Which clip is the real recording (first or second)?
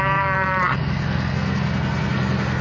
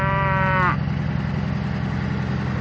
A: second